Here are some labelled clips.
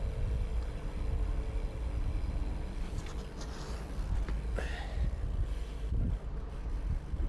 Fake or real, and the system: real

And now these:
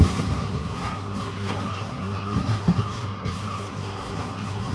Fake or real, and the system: fake, codec, SNAC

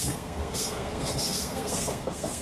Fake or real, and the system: fake, codec, SNAC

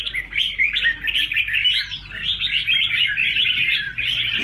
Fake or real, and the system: real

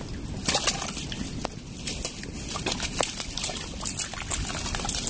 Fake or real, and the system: real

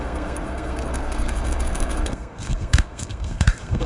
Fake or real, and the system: fake, codec, SNAC